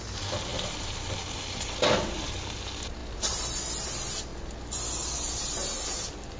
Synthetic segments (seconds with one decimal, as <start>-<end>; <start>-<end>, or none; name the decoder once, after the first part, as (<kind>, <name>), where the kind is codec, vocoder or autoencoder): 0.5-2.3 (vocoder, BigVGAN v2); 3.0-3.6